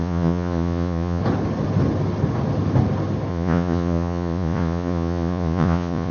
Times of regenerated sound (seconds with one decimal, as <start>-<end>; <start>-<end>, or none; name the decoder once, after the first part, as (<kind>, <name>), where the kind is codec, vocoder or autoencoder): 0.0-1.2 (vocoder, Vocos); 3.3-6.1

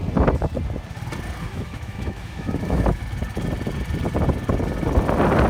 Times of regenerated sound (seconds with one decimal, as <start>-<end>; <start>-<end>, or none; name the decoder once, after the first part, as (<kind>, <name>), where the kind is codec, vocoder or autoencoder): 1.4-3.0 (autoencoder, DAC-VAE)

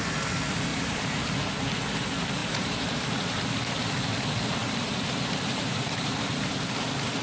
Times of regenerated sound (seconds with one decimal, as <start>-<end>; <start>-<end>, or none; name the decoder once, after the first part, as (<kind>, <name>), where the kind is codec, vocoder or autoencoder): 0.7-1.3 (vocoder, BigVGAN v2); 2.4-3.0; 4.6-6.3

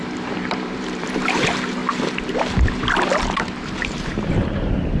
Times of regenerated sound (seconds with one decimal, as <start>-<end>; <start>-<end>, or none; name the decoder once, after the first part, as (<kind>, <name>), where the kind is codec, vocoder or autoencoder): 0.0-1.8 (vocoder, BigVGAN v2); 3.3-5.0